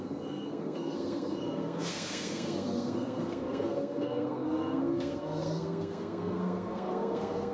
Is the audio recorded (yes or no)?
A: no